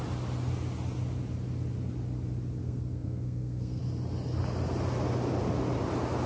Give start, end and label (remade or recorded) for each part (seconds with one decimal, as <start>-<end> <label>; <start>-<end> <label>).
0.0-2.6 recorded; 2.6-3.8 remade; 3.8-6.3 recorded